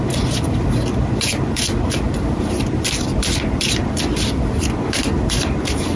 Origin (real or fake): fake